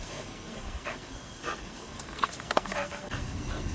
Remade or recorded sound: remade